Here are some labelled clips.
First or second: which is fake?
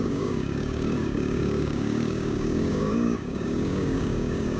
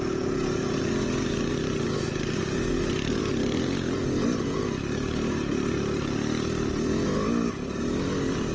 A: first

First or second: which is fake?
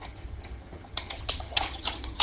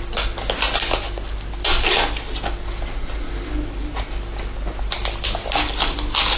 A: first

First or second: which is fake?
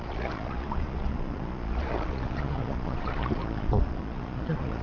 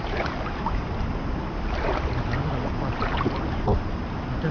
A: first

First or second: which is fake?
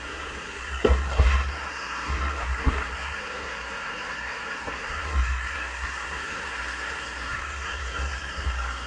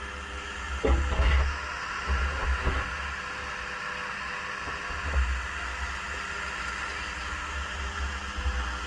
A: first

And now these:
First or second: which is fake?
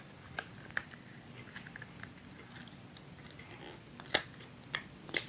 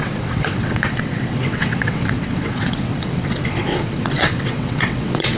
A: second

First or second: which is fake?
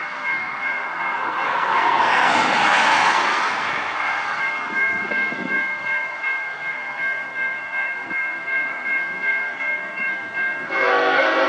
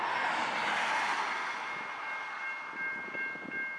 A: first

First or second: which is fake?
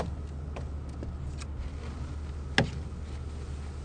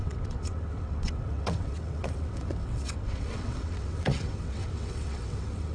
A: second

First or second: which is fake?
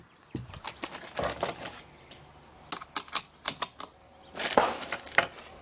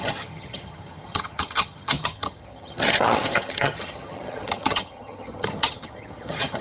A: second